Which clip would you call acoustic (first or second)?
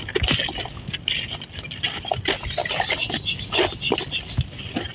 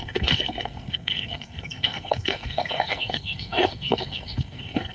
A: first